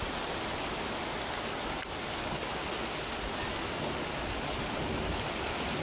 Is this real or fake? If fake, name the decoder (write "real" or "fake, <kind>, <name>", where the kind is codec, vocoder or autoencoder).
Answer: real